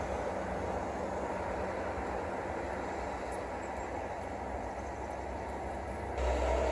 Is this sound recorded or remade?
recorded